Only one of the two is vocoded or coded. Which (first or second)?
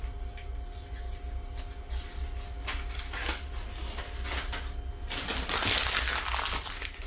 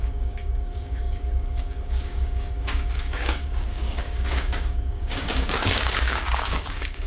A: second